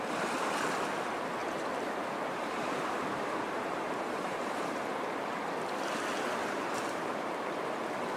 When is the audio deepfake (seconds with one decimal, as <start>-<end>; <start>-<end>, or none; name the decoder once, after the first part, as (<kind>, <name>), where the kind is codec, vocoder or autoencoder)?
1.4-4.8 (vocoder, BigVGAN v2); 6.4-7.7

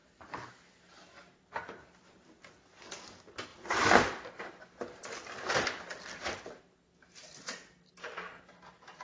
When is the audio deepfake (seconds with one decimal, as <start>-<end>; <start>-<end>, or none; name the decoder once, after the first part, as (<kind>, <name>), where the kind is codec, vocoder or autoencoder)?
none

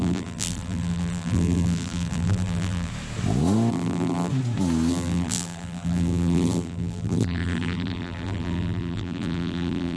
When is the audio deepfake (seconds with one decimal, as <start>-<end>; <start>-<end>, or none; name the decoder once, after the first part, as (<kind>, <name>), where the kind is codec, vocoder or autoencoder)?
0.0-2.9 (vocoder, BigVGAN v2); 3.7-4.3; 4.9-10.0

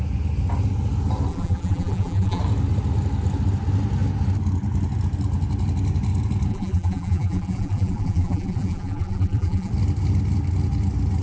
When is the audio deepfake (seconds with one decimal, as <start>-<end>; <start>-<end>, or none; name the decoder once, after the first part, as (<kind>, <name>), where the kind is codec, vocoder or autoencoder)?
1.3-2.4 (vocoder, BigVGAN v2); 6.5-9.7